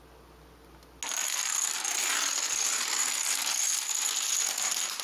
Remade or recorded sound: recorded